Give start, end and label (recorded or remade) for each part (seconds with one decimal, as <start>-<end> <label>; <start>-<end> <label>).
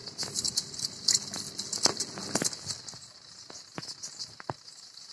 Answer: 0.0-5.1 recorded